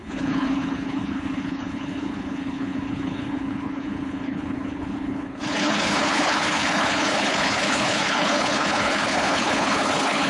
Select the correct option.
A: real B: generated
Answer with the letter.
B